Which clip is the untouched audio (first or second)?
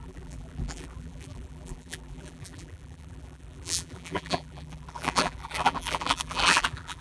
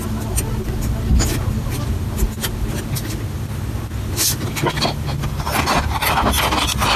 second